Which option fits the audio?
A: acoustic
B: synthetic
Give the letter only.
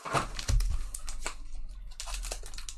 A